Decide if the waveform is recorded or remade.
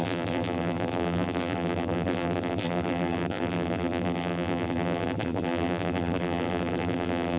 remade